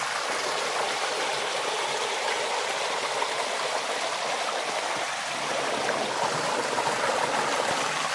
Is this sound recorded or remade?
recorded